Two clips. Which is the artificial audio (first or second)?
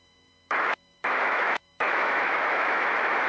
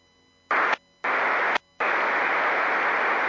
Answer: first